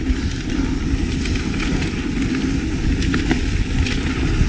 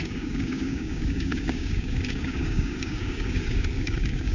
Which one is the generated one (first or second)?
second